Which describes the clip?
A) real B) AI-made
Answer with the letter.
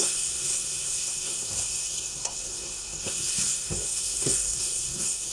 B